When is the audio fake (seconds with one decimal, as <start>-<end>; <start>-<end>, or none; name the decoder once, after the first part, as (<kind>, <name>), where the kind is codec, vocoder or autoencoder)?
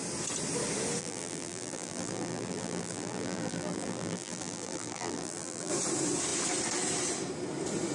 1.0-5.7 (vocoder, BigVGAN v2)